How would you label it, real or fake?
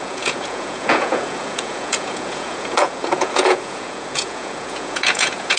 fake